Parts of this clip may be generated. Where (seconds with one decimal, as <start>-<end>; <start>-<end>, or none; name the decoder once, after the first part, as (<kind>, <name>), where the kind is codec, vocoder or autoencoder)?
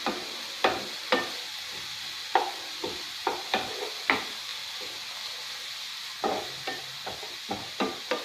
none